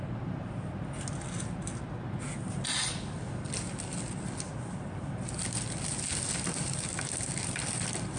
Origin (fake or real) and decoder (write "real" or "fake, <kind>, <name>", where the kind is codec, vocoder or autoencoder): real